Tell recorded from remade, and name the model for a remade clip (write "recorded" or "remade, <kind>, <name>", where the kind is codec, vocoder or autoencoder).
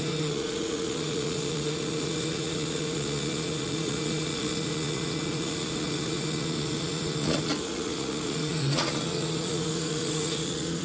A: remade, vocoder, Vocos